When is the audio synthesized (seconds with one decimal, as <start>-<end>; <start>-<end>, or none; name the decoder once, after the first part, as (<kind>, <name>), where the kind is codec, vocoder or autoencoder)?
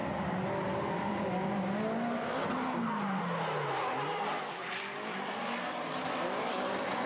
none